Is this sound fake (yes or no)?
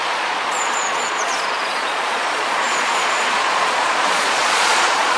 yes